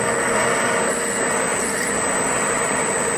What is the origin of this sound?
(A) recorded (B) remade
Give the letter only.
A